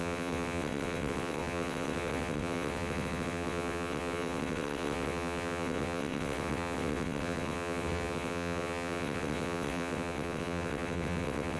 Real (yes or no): no